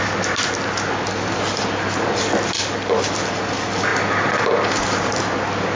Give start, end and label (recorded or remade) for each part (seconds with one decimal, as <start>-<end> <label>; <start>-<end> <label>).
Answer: 0.0-3.9 recorded; 3.9-5.0 remade; 5.0-5.8 recorded